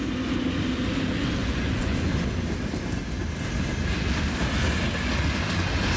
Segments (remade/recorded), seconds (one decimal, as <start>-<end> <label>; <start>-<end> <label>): 0.0-1.4 recorded; 1.4-2.1 remade; 2.1-6.0 recorded